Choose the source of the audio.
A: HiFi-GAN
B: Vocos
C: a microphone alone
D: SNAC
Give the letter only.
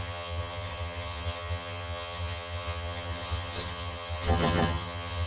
A